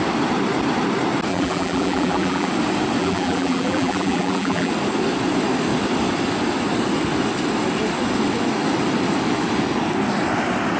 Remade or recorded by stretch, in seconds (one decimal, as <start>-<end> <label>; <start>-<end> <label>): 0.0-1.3 recorded; 1.3-2.5 remade; 2.5-3.0 recorded; 3.0-4.7 remade; 4.7-10.8 recorded